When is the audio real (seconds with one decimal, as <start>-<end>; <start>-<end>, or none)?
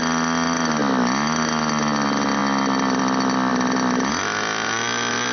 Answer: 0.0-5.3